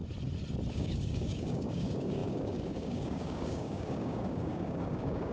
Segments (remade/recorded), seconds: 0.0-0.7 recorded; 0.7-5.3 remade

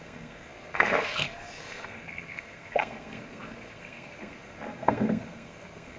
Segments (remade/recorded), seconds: 0.0-6.0 remade

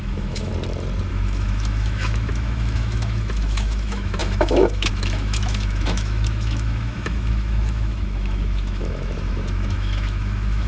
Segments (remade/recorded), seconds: 0.0-0.5 remade; 0.5-1.1 recorded; 1.1-10.7 remade

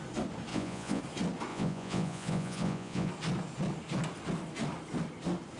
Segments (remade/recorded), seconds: 0.0-0.5 recorded; 0.5-1.0 remade; 1.0-1.5 recorded; 1.5-3.1 remade; 3.1-5.6 recorded